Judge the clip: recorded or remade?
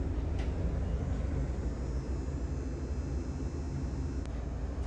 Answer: recorded